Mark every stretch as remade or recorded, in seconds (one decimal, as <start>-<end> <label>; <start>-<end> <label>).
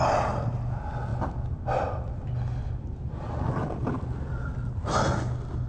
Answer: 0.0-1.1 recorded; 1.1-4.5 remade; 4.5-5.7 recorded